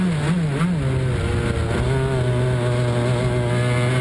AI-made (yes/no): no